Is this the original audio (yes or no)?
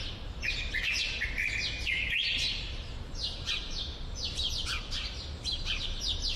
no